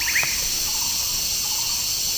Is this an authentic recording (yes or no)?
yes